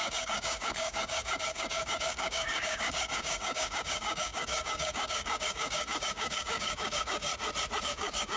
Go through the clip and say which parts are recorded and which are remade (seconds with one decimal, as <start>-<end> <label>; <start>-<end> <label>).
0.0-7.3 remade; 7.3-7.8 recorded; 7.8-8.4 remade